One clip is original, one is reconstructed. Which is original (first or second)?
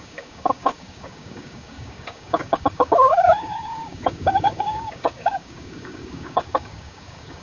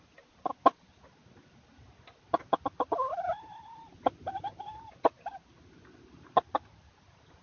second